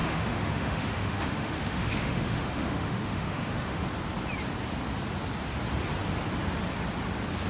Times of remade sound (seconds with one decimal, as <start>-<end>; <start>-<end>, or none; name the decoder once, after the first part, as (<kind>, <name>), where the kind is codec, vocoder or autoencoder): 0.0-3.9 (autoencoder, DAC-VAE)